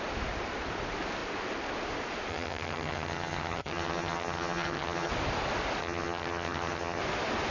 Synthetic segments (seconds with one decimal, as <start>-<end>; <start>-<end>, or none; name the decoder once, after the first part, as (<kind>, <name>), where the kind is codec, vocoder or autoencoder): 2.3-5.1 (vocoder, HiFi-GAN); 5.8-7.0